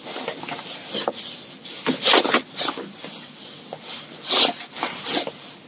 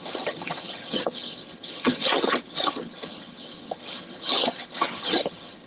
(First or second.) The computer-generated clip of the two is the second